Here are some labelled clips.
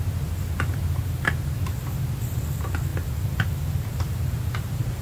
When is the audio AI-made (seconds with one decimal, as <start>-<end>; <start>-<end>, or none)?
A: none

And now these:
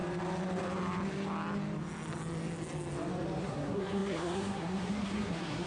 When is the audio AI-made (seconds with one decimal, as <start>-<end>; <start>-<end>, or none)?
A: 3.4-5.7

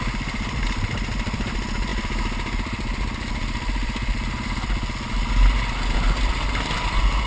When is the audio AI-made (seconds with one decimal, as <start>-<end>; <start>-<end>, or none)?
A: none